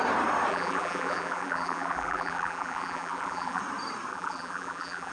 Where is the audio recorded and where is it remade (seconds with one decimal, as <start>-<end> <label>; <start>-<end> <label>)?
0.0-0.5 recorded; 0.5-3.6 remade; 3.6-4.1 recorded; 4.1-5.1 remade